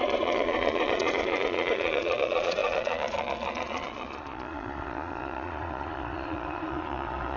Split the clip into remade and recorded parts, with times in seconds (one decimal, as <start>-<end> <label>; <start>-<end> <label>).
0.0-7.4 remade

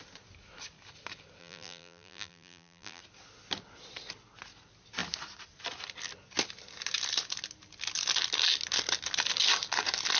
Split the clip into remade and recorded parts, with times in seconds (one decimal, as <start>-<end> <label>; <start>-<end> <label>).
0.0-1.4 recorded; 1.4-3.0 remade; 3.0-10.2 recorded

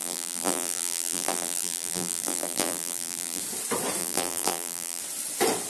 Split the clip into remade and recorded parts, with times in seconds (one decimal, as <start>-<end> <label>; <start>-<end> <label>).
0.0-3.4 remade; 3.4-4.0 recorded; 4.0-5.0 remade; 5.0-5.7 recorded

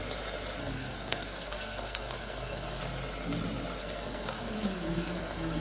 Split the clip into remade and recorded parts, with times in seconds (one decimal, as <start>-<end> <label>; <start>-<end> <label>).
0.0-0.6 recorded; 0.6-2.8 remade; 2.8-3.8 recorded; 3.8-5.6 remade

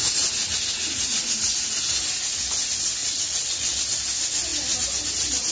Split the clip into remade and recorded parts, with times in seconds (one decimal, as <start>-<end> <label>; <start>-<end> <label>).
0.0-3.0 recorded; 3.0-4.0 remade; 4.0-5.5 recorded